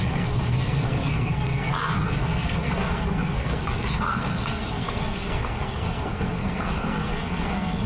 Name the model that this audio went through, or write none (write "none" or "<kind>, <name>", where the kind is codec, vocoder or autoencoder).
codec, SNAC